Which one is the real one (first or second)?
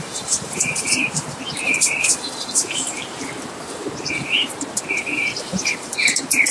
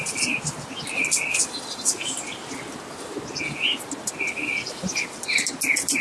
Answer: second